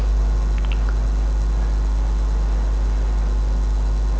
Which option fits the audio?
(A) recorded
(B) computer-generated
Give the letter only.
A